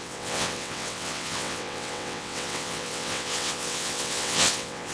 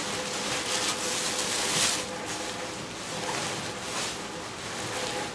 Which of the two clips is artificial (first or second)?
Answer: first